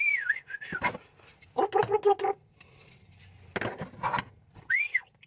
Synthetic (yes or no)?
no